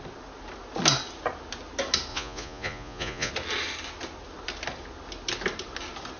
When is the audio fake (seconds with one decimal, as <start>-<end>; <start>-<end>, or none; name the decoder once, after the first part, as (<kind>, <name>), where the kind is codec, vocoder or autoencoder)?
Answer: 2.1-3.3 (vocoder, Vocos)